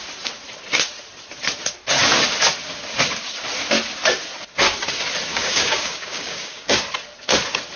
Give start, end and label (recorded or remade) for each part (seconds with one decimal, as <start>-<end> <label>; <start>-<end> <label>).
0.0-5.3 recorded; 5.3-6.7 remade; 6.7-7.8 recorded